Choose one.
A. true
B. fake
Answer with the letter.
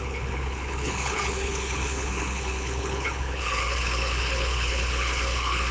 B